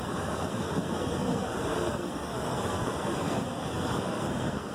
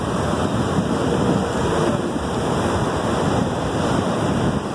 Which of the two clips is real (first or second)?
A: second